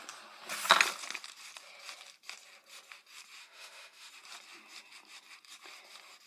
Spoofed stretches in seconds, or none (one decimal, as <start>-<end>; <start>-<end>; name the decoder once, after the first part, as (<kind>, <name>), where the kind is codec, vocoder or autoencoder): 3.4-4.1 (autoencoder, DAC-VAE)